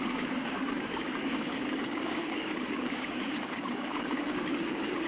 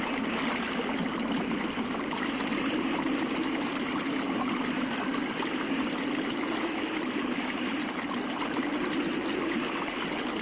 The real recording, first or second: second